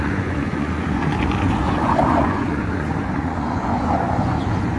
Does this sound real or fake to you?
fake